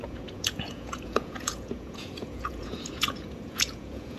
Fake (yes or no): yes